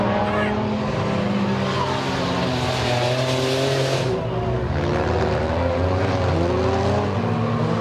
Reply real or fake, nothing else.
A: real